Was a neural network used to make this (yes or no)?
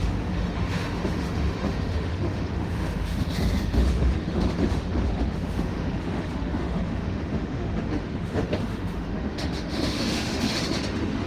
yes